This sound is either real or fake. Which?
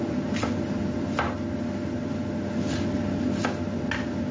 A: real